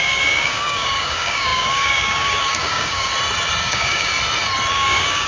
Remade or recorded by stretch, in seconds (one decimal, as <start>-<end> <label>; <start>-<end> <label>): 0.0-3.1 remade; 3.1-3.6 recorded; 3.6-4.1 remade; 4.1-4.7 recorded; 4.7-5.3 remade